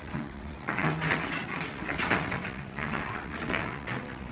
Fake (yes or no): yes